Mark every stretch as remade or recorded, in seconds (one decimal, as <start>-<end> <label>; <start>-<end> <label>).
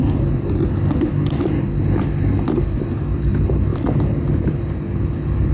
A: 0.0-3.7 recorded; 3.7-4.6 remade; 4.6-5.5 recorded